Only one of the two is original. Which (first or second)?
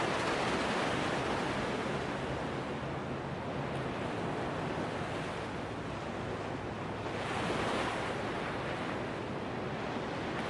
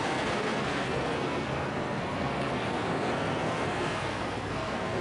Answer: first